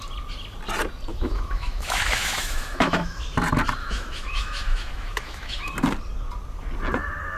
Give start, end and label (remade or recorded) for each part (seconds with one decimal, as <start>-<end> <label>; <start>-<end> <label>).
0.0-1.1 recorded; 1.1-3.2 remade; 3.2-3.8 recorded; 3.8-5.6 remade; 5.6-7.4 recorded